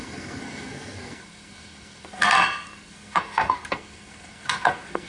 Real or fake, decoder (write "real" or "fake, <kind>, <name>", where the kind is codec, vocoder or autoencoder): fake, codec, SNAC